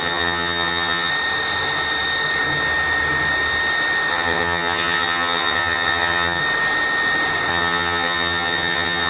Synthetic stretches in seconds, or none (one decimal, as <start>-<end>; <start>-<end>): 0.0-1.1; 4.1-6.4; 7.5-9.1